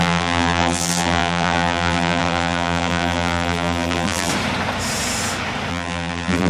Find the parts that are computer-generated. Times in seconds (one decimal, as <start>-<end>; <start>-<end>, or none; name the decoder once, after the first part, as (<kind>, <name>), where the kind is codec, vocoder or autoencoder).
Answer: 0.0-4.3 (vocoder, BigVGAN v2); 5.7-6.5